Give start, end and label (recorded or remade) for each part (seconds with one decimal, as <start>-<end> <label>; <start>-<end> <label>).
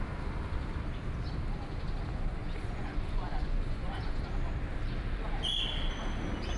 0.0-2.4 recorded; 2.4-4.2 remade; 4.2-6.6 recorded